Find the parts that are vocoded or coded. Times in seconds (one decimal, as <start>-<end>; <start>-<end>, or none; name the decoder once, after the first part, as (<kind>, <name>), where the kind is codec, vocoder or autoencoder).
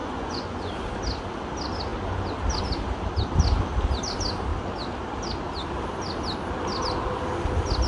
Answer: 0.0-0.7 (vocoder, Vocos)